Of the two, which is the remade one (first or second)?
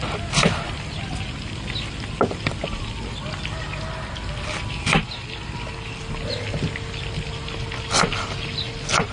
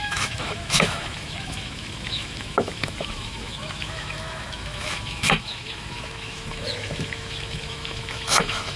second